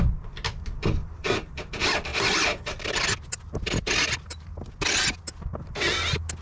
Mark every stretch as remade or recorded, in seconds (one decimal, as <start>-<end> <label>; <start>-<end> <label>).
0.0-2.1 recorded; 2.1-2.9 remade; 2.9-6.4 recorded